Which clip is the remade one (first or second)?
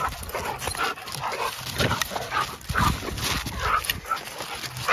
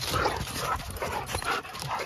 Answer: second